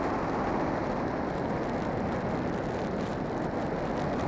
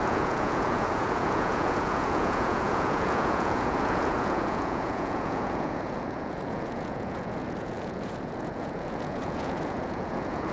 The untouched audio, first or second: first